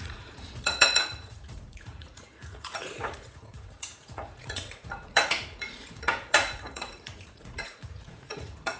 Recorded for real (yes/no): no